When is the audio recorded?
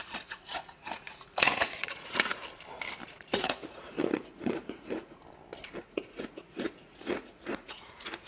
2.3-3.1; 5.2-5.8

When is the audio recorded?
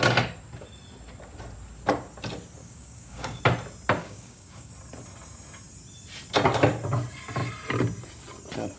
0.0-2.6; 3.4-4.0; 4.7-8.8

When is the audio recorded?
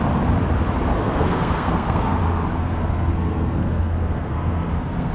0.0-1.0; 2.2-2.6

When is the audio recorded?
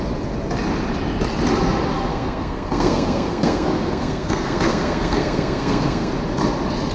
0.0-2.1; 6.1-6.9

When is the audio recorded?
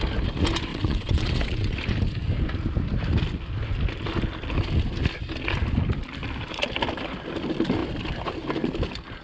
0.0-0.7; 1.8-9.2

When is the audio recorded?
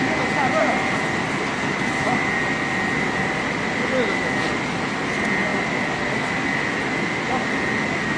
0.0-8.2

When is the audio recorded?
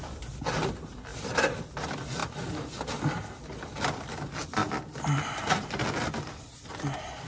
0.0-7.3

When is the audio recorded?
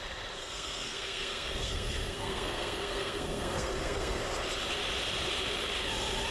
0.0-0.4; 4.2-6.3